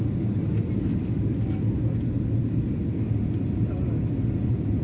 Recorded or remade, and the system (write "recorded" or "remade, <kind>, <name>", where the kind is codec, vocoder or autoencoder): recorded